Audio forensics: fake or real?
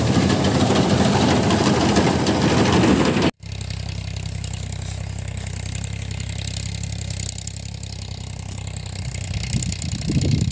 real